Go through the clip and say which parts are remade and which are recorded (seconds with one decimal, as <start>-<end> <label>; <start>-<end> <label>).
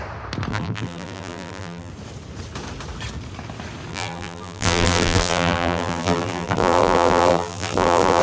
0.0-0.5 recorded; 0.5-1.9 remade; 1.9-3.9 recorded; 3.9-8.2 remade